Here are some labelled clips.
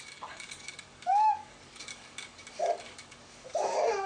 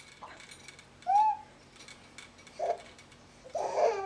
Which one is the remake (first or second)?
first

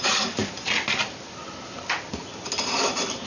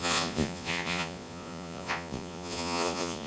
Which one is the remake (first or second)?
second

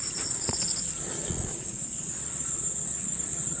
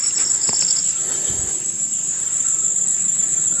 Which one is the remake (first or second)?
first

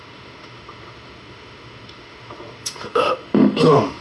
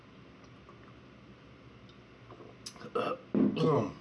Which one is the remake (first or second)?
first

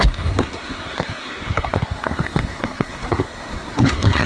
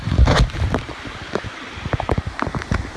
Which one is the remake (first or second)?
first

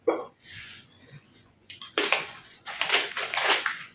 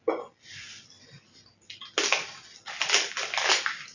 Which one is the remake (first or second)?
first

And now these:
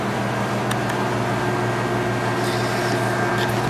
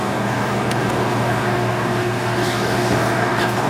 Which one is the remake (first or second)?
second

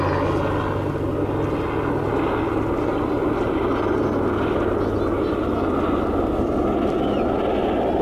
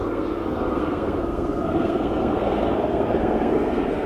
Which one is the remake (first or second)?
second